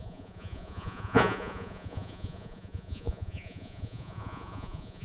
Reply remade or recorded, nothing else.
remade